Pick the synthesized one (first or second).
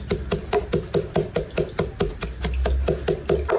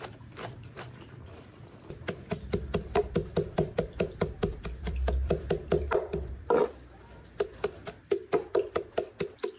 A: second